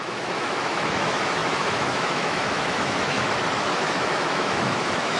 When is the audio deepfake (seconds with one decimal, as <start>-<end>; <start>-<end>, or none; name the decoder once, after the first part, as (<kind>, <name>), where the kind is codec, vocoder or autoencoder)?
0.0-5.2 (autoencoder, DAC-VAE)